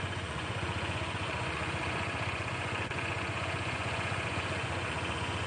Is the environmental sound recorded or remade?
remade